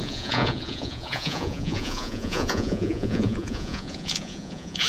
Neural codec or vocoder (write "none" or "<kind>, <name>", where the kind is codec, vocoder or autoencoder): vocoder, Vocos